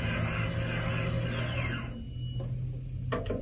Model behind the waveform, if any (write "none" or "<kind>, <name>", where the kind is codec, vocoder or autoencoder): none